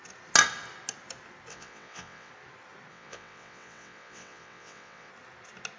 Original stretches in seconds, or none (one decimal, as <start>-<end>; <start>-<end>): 0.0-1.5; 2.3-2.9; 5.1-5.8